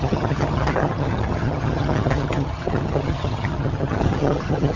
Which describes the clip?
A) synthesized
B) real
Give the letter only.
A